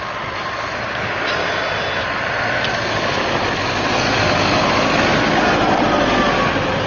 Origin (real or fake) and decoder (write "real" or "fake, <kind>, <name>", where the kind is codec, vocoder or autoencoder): real